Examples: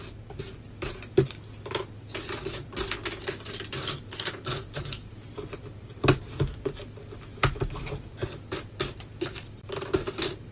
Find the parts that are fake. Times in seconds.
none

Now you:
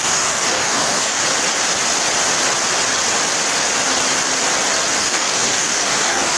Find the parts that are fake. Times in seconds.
0.0-1.2 (codec, DAC); 5.0-6.4

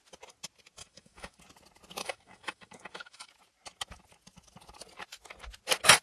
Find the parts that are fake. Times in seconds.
0.8-1.4 (autoencoder, DAC-VAE); 2.0-3.3

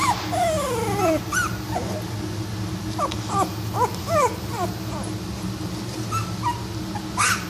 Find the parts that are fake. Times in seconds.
none

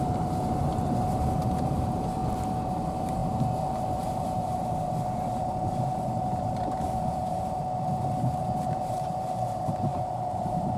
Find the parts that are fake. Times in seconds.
0.0-2.2 (vocoder, BigVGAN v2); 2.7-10.8

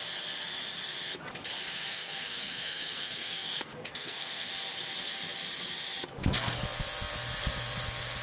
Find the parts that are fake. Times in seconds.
1.9-4.5 (codec, SNAC)

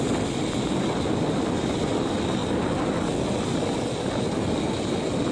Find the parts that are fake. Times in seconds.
none